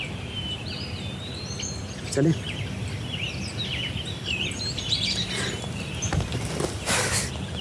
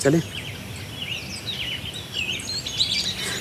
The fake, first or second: first